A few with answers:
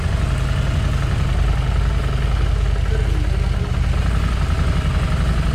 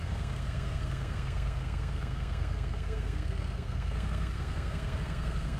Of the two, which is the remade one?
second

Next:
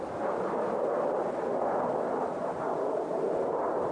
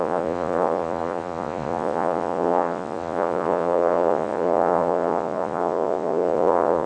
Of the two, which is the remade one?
second